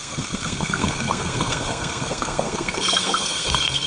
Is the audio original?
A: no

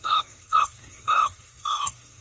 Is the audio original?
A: no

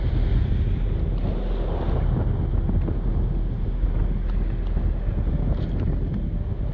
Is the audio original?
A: yes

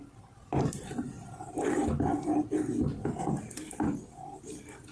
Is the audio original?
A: yes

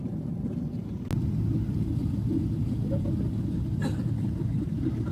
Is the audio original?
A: yes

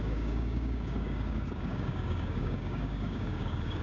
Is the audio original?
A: no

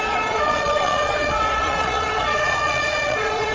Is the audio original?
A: no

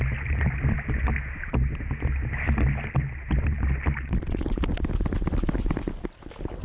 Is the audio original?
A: yes